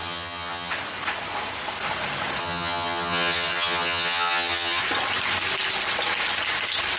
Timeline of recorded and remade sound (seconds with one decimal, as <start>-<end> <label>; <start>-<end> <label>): 0.0-0.7 remade; 0.7-2.4 recorded; 2.4-4.8 remade; 4.8-7.0 recorded